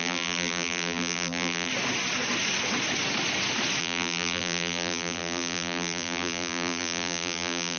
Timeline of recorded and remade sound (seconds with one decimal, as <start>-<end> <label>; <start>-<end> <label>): 0.0-1.7 remade; 1.7-3.8 recorded; 3.8-7.8 remade